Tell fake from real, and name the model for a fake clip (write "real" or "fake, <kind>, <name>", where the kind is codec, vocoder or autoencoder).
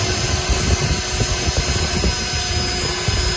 real